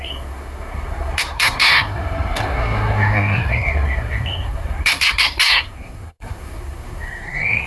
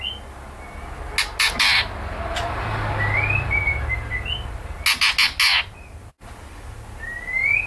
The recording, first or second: second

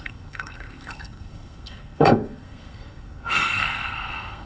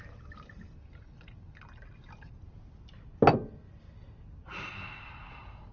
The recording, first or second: second